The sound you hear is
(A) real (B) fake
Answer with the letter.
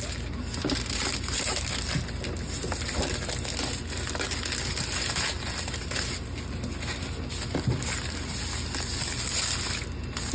A